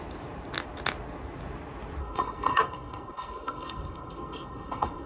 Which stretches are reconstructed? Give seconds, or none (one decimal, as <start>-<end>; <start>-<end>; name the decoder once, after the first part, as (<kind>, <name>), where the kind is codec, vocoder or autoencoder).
2.0-5.1 (codec, SNAC)